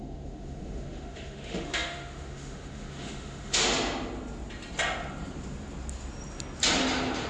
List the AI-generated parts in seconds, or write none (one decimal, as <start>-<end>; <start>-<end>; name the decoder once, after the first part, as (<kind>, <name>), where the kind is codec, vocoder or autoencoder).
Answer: 0.0-3.6 (autoencoder, DAC-VAE)